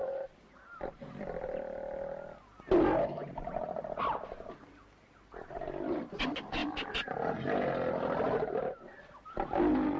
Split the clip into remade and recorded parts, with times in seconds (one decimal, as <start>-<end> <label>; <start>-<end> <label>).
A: 0.0-10.0 recorded

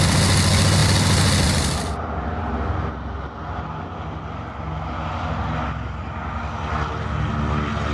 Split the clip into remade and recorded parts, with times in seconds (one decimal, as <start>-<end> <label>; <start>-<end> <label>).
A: 0.0-7.9 recorded